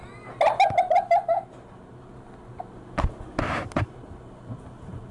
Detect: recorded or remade recorded